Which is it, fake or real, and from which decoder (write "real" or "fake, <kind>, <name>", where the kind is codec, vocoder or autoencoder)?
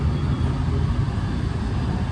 real